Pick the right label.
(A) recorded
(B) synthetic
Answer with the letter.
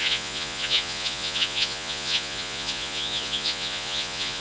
B